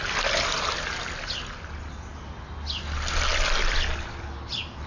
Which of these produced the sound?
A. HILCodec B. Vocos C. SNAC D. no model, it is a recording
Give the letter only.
D